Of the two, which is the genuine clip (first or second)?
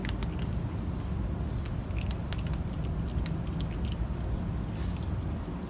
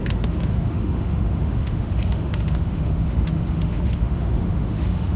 first